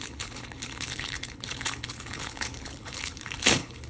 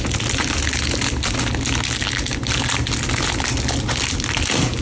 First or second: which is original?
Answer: second